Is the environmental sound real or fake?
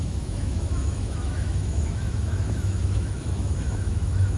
fake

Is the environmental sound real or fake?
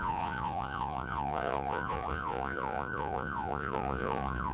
fake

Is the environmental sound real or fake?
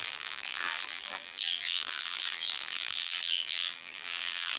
fake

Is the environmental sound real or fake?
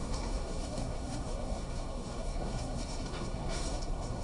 fake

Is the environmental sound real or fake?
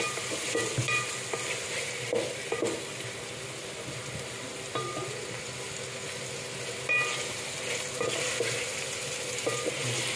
real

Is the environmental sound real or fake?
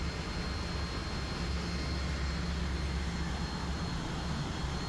real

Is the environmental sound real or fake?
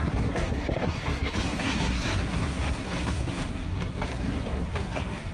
fake